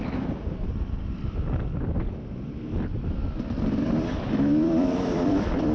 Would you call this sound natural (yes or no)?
no